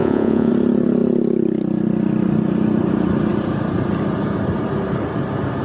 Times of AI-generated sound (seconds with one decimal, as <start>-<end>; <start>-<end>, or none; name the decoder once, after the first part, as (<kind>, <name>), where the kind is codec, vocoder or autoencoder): 0.0-0.5 (vocoder, Vocos)